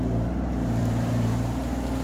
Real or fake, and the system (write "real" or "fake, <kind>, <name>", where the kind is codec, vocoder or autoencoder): fake, vocoder, BigVGAN v2